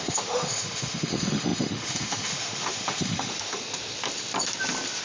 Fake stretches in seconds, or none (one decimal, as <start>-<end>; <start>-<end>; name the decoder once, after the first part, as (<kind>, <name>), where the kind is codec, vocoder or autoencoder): 0.0-3.6 (autoencoder, DAC-VAE)